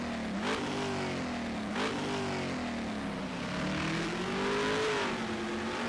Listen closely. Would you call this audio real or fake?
real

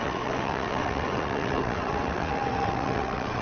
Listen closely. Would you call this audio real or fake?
fake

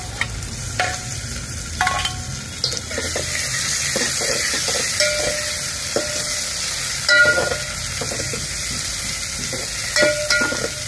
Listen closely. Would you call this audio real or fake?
real